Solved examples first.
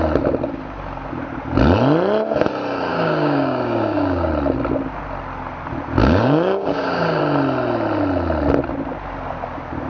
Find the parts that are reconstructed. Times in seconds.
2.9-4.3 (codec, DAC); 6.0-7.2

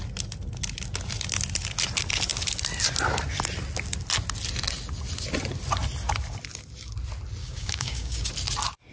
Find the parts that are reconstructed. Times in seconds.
7.4-8.3 (codec, DAC)

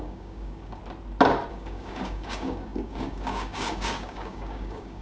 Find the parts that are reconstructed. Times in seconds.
0.0-0.8 (codec, DAC); 1.5-5.0

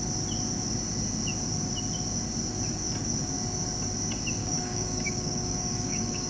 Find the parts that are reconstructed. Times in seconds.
4.4-6.3 (codec, DAC)

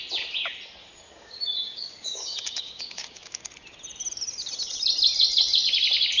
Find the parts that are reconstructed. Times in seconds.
0.8-3.5 (codec, DAC)

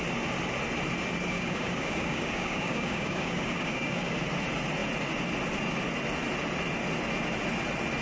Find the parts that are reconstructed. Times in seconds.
1.3-4.1 (codec, DAC)